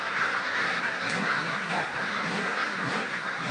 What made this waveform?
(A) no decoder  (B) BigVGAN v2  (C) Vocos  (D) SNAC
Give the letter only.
D